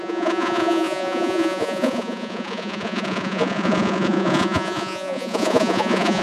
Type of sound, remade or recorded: remade